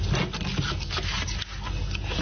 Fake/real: real